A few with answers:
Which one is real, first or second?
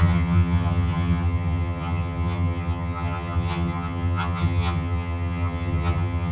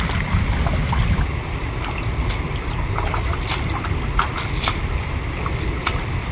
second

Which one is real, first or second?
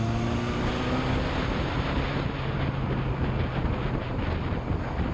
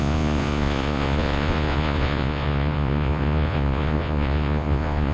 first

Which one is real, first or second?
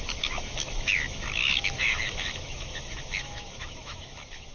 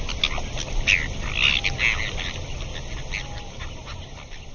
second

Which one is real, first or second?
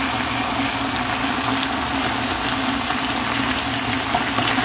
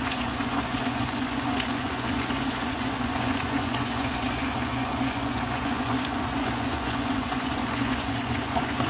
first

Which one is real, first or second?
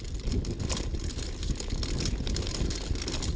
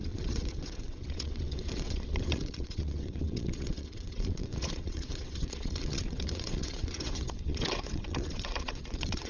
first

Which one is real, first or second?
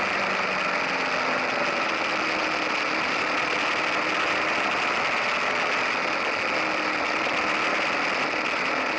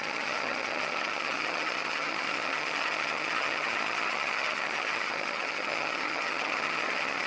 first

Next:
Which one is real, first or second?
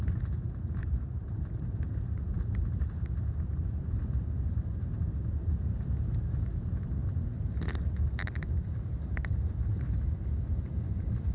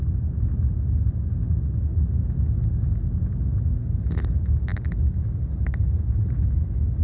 second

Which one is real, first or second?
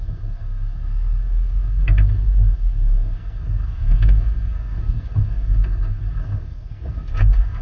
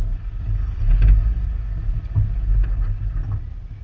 second